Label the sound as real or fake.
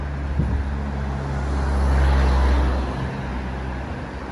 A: real